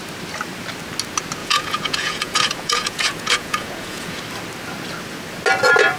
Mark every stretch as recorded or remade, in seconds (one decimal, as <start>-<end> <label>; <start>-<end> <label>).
0.0-1.4 recorded; 1.4-4.2 remade; 4.2-6.0 recorded